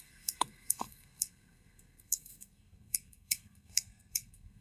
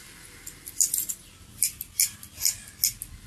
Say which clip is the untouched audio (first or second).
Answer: second